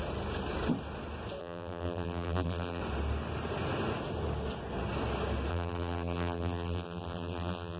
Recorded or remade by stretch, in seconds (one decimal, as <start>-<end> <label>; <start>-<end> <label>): 0.0-1.4 recorded; 1.4-2.8 remade; 2.8-5.5 recorded; 5.5-7.8 remade